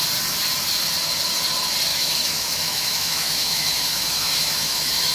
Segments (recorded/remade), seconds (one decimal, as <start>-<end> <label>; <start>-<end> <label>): 0.0-1.9 recorded; 1.9-5.1 remade